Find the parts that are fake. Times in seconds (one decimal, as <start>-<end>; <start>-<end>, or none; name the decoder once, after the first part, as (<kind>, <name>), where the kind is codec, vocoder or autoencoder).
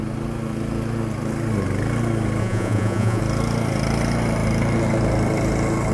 2.4-3.2 (vocoder, Vocos)